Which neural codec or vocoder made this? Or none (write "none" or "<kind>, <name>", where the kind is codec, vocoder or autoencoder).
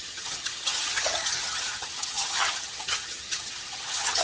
vocoder, HiFi-GAN